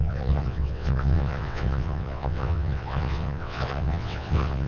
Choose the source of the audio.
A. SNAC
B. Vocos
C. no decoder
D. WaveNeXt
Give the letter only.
D